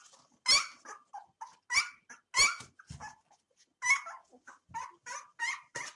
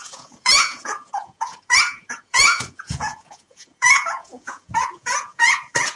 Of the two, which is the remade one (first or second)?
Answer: second